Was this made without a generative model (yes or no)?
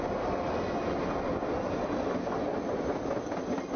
yes